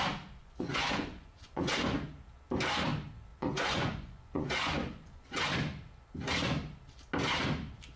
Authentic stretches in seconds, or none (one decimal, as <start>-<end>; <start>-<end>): 0.0-0.4; 1.7-3.3; 5.3-8.0